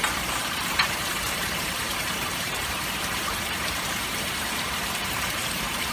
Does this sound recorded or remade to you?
remade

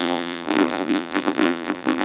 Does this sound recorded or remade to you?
remade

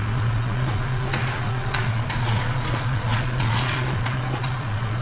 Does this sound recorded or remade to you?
remade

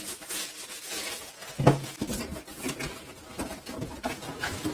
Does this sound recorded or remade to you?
recorded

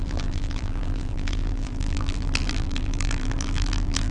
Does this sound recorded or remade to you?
remade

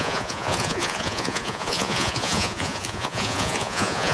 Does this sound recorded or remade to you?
remade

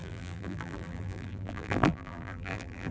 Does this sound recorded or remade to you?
remade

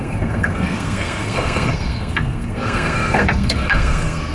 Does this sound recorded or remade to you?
remade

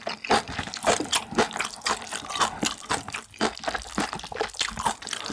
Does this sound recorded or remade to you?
recorded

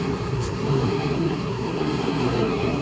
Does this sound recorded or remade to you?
remade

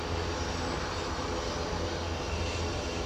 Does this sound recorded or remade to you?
recorded